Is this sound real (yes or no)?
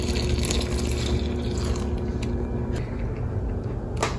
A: yes